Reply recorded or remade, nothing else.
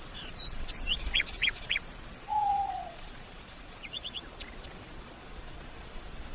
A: remade